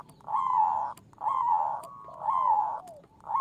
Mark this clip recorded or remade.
recorded